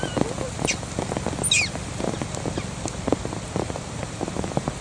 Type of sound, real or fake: real